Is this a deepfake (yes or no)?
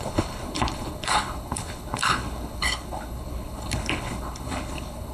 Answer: yes